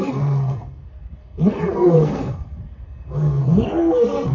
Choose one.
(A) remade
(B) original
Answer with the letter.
A